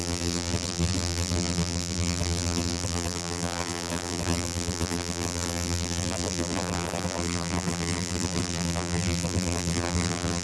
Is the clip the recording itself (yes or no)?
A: no